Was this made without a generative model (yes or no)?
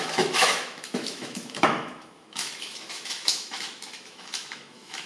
no